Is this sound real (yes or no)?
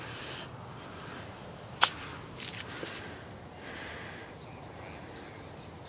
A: yes